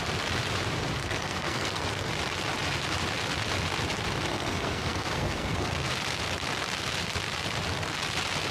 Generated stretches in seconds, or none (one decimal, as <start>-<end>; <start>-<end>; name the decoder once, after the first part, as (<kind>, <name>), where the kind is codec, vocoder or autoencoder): 1.0-2.1 (codec, SNAC); 4.3-5.9